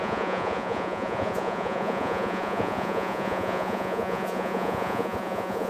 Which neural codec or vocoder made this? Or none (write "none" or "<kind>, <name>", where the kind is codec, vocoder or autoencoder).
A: vocoder, Vocos